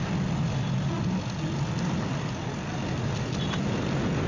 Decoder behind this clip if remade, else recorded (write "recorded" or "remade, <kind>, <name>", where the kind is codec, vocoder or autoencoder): recorded